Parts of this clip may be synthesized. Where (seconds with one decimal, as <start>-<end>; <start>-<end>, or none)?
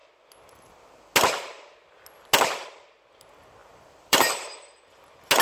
3.6-4.8